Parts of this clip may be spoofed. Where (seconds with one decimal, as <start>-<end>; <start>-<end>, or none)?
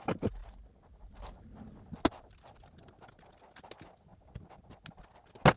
none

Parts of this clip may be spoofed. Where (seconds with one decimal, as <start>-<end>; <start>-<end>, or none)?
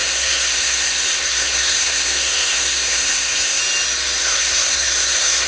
0.0-3.6; 4.2-5.5